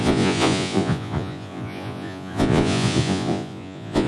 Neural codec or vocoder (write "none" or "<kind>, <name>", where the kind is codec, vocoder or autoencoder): vocoder, Vocos